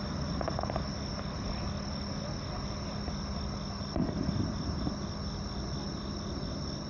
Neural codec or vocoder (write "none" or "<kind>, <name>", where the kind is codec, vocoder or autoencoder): none